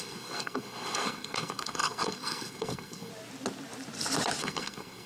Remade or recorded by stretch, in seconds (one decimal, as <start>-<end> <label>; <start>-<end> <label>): 0.0-3.1 remade; 3.1-4.4 recorded; 4.4-5.1 remade